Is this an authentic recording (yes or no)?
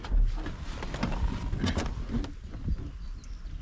yes